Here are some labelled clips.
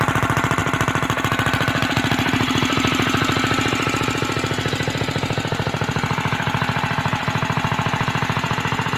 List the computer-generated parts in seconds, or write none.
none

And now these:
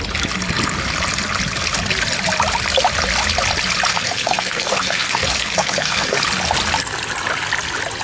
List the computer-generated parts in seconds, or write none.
3.9-6.2 (codec, SNAC)